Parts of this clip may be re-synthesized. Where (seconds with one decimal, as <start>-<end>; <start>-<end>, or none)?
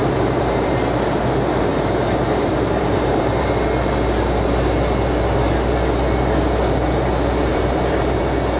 0.0-0.7; 1.7-3.5; 7.5-8.2